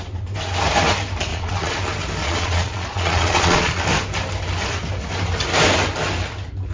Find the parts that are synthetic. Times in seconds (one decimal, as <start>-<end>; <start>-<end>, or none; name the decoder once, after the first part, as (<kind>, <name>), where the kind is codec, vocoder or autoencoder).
1.3-1.8 (vocoder, Vocos); 2.2-3.8